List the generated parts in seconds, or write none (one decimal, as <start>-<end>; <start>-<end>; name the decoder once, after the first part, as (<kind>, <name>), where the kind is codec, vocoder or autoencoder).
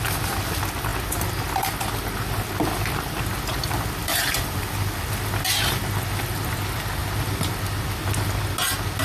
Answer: 4.0-4.7 (vocoder, BigVGAN v2)